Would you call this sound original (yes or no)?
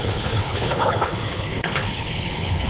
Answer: no